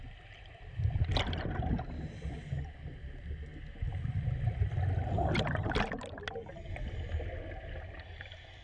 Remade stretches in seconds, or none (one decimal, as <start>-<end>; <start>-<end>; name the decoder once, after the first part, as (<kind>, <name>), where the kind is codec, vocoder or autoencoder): none